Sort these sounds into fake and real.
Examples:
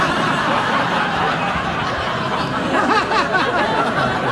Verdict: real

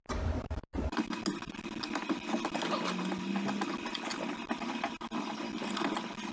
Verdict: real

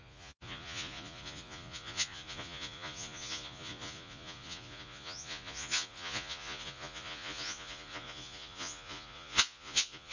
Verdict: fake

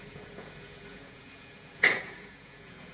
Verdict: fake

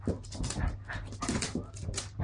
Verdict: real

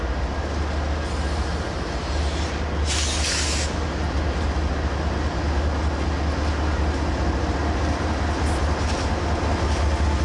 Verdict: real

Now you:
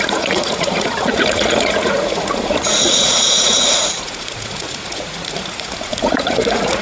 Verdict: fake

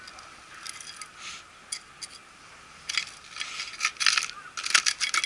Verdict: real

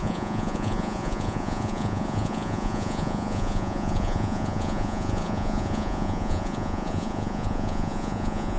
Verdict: fake